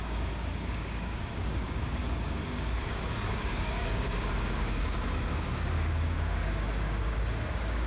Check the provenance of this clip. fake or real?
fake